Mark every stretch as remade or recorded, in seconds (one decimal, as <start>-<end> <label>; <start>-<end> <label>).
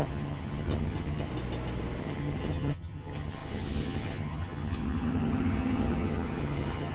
0.0-1.3 remade; 1.3-2.0 recorded; 2.0-6.9 remade